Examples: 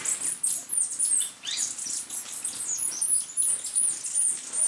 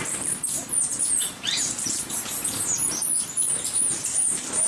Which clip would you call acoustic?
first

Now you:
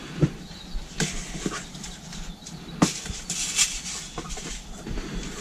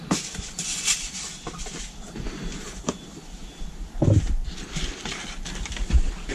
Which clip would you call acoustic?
first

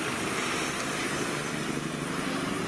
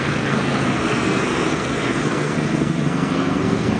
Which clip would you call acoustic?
first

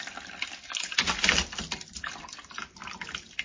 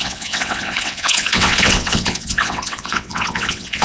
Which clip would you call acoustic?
first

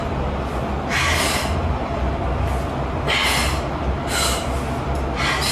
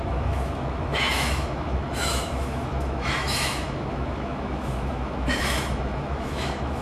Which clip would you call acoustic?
first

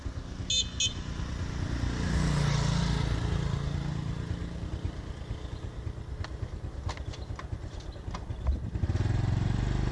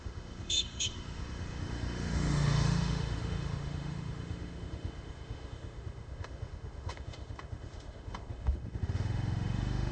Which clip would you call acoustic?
first